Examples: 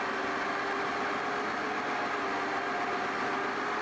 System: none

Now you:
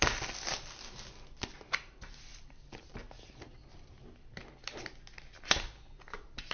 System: none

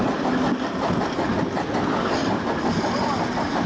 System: none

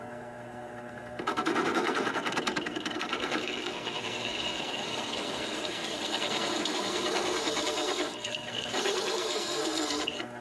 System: codec, SNAC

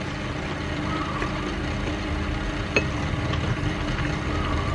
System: none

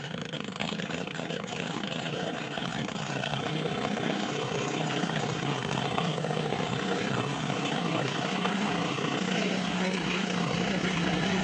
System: codec, SNAC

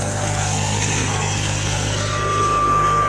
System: codec, SNAC